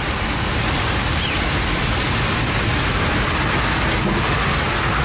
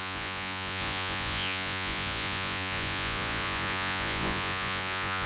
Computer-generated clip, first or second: second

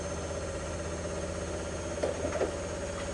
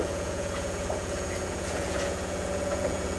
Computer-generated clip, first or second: second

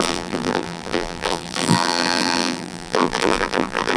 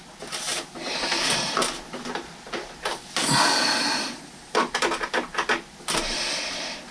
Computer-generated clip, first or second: first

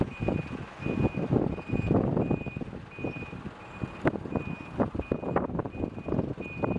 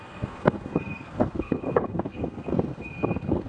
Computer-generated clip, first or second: second